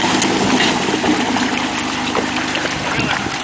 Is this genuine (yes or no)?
yes